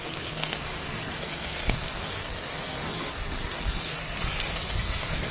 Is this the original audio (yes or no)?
no